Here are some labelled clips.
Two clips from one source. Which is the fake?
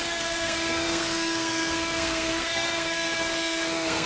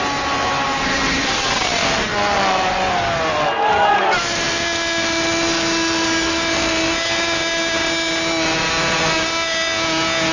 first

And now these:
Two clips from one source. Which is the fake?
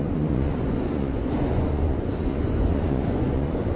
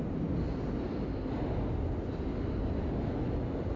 first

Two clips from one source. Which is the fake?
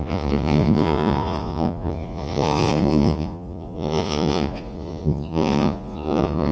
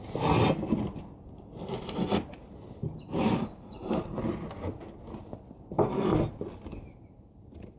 first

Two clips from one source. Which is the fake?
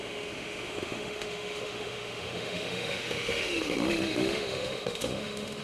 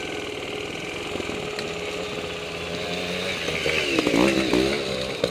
first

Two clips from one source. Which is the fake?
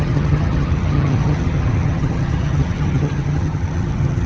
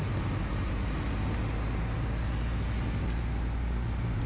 first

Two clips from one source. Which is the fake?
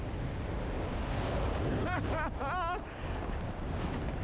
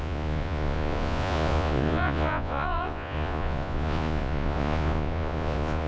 second